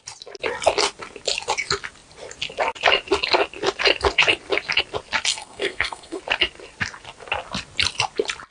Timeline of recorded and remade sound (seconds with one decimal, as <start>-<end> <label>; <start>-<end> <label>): 0.0-5.3 recorded; 5.3-6.2 remade; 6.2-8.5 recorded